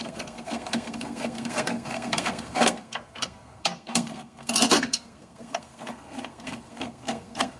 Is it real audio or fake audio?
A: fake